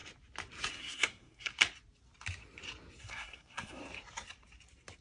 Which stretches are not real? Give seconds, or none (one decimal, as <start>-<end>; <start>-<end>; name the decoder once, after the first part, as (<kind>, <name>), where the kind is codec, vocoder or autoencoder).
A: 0.7-1.5 (codec, SNAC); 3.0-3.8